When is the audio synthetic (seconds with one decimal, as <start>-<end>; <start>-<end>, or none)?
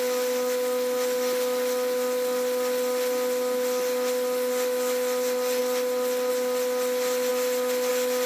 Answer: none